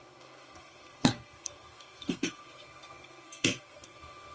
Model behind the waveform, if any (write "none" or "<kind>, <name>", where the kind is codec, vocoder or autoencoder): codec, SNAC